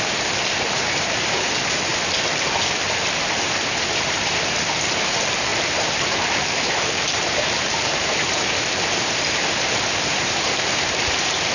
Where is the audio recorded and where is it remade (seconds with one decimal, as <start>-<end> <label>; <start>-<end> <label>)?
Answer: 0.0-1.9 remade; 1.9-3.9 recorded; 3.9-11.5 remade